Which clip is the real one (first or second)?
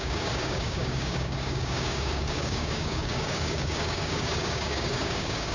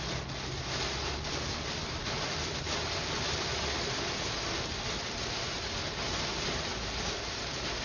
second